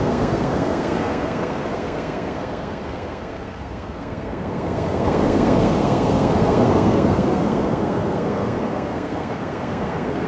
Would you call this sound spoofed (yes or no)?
yes